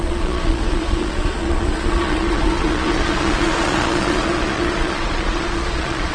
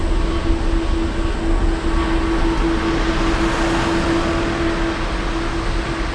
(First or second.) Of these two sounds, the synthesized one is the first